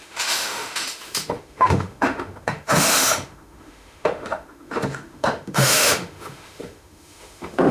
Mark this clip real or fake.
fake